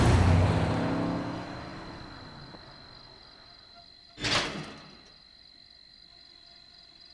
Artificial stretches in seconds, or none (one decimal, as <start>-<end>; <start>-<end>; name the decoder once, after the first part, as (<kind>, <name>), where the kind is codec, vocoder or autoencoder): none